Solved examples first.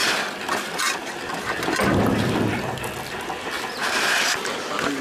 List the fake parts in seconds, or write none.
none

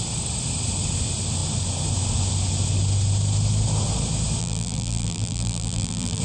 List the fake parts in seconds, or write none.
4.4-6.2 (vocoder, BigVGAN v2)